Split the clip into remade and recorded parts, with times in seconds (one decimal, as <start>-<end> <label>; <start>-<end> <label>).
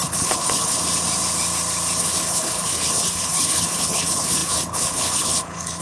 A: 0.0-0.8 remade; 0.8-2.0 recorded; 2.0-5.8 remade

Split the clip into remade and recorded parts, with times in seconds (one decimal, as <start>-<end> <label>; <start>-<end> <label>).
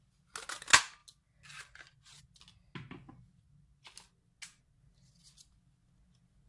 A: 0.0-6.5 recorded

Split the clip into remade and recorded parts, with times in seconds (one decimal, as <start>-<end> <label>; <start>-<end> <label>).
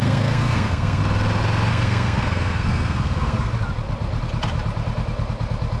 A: 0.0-1.0 remade; 1.0-1.7 recorded; 1.7-3.5 remade; 3.5-5.8 recorded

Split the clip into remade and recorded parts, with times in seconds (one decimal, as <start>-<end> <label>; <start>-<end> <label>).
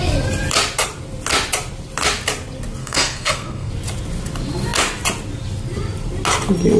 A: 0.0-2.8 recorded; 2.8-3.7 remade; 3.7-6.8 recorded